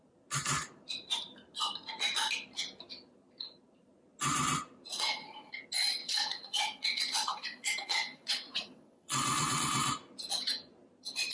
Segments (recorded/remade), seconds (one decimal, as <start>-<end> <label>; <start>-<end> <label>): 0.0-4.9 recorded; 4.9-5.5 remade; 5.5-6.0 recorded; 6.0-9.9 remade; 9.9-11.3 recorded